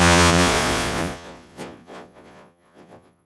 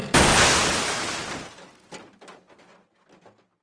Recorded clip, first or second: second